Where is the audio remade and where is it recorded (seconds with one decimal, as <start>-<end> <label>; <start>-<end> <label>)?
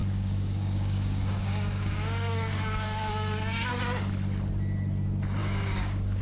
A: 0.0-3.7 remade; 3.7-5.4 recorded; 5.4-6.2 remade